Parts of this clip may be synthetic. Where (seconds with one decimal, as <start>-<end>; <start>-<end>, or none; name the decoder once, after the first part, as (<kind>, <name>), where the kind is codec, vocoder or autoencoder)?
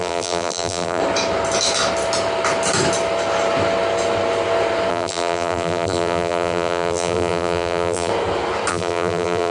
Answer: 0.0-1.0 (vocoder, BigVGAN v2); 4.9-8.1; 8.7-9.5